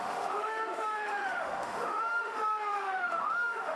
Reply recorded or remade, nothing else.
remade